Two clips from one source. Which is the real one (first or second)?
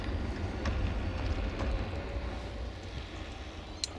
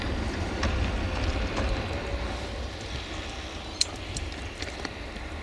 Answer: first